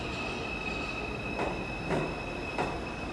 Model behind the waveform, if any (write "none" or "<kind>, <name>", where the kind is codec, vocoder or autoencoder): none